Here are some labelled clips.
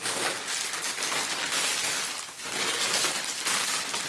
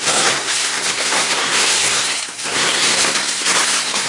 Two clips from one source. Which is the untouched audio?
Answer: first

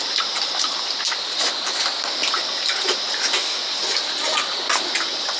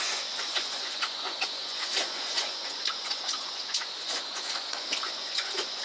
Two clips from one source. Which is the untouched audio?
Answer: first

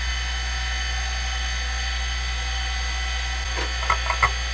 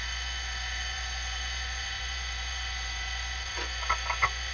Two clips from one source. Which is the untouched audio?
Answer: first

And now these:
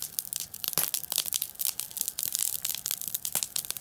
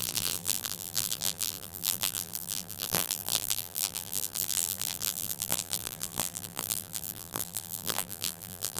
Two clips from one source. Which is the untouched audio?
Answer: first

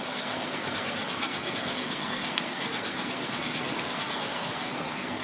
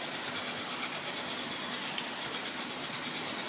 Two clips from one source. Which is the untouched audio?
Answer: second